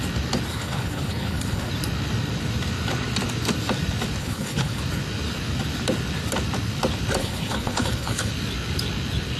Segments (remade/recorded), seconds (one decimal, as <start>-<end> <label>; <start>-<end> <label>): 0.0-0.5 recorded; 0.5-1.7 remade; 1.7-4.2 recorded; 4.2-4.8 remade; 4.8-7.2 recorded; 7.2-8.3 remade; 8.3-9.4 recorded